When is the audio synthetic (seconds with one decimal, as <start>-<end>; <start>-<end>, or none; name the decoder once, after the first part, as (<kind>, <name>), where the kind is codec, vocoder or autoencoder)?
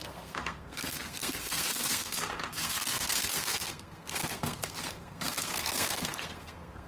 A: 0.0-6.9 (codec, SNAC)